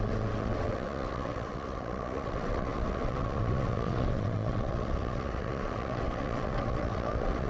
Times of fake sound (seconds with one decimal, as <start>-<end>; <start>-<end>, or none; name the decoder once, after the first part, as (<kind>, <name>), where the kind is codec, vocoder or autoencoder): 0.0-7.5 (vocoder, WaveNeXt)